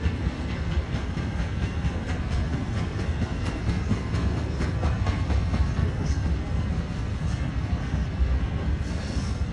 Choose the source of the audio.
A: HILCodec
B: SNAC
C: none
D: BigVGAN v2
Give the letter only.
B